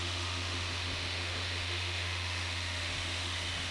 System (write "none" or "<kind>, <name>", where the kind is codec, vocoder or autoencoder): autoencoder, DAC-VAE